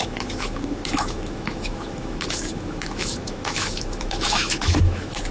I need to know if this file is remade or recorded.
remade